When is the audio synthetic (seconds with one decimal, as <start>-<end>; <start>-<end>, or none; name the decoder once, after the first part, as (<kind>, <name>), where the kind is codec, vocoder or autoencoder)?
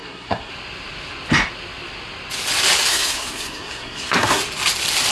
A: 0.0-0.5 (codec, SNAC); 2.9-4.4